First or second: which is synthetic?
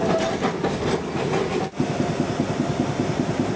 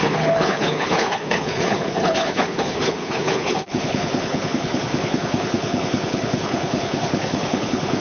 second